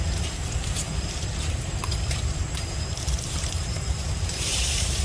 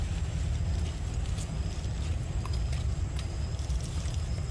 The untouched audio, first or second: second